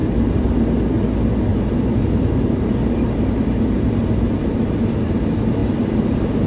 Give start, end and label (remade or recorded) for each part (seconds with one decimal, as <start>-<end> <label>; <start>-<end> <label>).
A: 0.0-0.5 remade; 0.5-1.5 recorded; 1.5-3.4 remade; 3.4-6.5 recorded